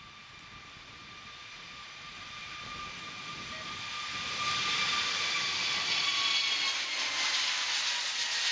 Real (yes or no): yes